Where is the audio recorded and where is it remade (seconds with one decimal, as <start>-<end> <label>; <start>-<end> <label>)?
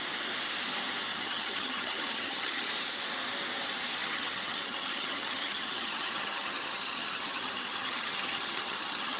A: 0.0-1.1 recorded; 1.1-2.7 remade; 2.7-4.0 recorded; 4.0-9.2 remade